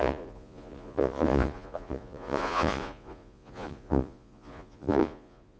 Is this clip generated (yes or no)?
yes